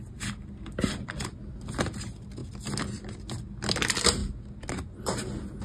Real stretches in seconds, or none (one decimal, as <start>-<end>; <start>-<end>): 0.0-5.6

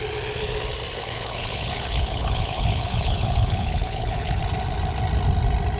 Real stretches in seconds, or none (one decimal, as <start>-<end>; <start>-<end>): 0.0-0.9; 4.4-5.8

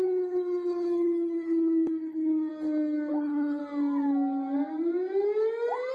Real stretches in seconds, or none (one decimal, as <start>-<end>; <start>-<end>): 2.5-3.1; 3.6-5.9

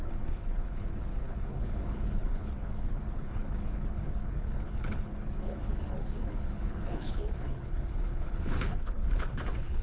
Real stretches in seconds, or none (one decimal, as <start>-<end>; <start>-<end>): none

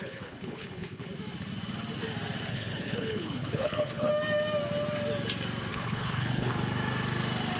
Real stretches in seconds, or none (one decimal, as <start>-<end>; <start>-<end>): 1.1-2.5; 4.1-5.7; 6.5-7.6

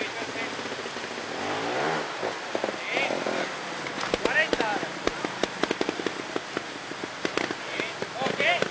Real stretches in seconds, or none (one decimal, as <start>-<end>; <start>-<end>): 0.0-8.7